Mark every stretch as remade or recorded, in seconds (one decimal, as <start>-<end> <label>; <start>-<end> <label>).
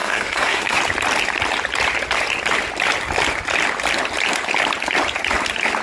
0.0-0.8 remade; 0.8-5.8 recorded